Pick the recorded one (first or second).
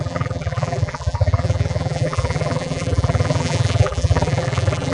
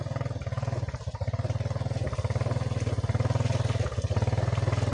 second